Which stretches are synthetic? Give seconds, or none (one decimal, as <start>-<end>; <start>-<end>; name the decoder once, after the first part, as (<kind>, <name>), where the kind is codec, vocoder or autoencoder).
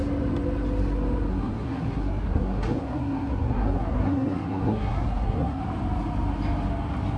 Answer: 1.3-5.6 (codec, SNAC)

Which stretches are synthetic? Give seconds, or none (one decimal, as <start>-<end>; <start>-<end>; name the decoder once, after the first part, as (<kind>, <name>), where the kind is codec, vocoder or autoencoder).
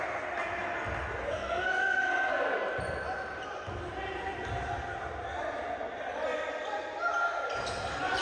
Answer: 1.2-2.3 (codec, SNAC)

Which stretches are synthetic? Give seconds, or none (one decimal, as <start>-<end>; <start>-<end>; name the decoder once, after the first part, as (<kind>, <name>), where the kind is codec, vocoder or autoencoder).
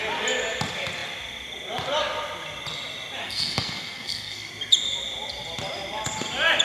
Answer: 3.2-4.5 (codec, SNAC)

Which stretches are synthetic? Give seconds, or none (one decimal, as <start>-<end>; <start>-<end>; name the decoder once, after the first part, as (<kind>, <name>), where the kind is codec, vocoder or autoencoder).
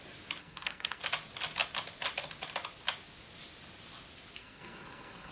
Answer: 0.4-1.0 (codec, SNAC); 4.4-5.3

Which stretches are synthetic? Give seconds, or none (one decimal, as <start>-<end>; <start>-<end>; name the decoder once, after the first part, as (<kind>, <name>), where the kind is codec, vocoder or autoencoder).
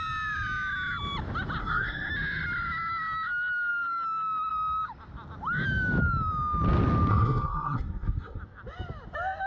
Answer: 1.6-2.1 (codec, SNAC); 7.1-8.4